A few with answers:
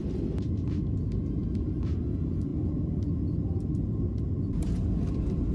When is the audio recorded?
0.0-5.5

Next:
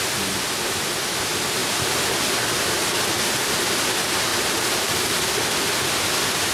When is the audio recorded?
0.0-1.6; 2.2-4.3; 5.1-6.5

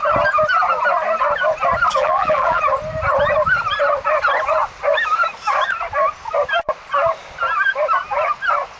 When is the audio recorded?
0.0-2.0; 2.6-8.8

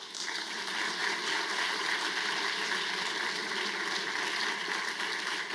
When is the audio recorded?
0.0-1.0; 4.1-5.5

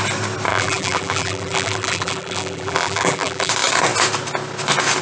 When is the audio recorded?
0.0-0.5; 3.5-5.0